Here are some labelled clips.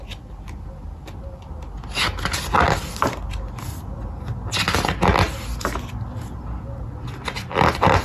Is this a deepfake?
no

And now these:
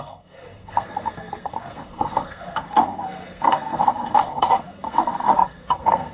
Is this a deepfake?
yes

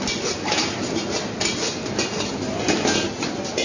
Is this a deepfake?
no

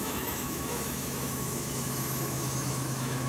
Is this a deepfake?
yes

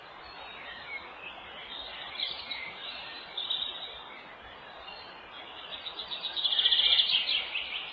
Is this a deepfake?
no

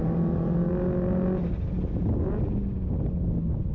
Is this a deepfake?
no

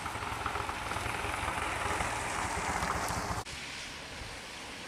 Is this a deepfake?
no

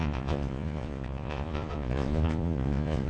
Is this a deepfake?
yes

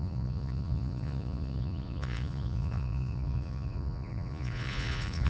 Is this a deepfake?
yes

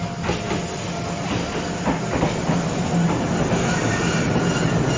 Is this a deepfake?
no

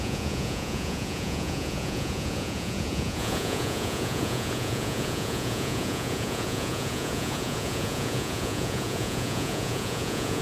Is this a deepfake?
yes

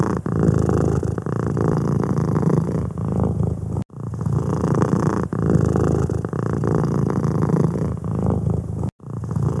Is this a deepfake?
no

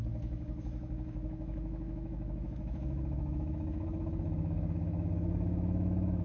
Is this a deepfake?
yes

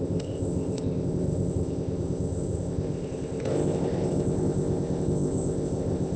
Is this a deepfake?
yes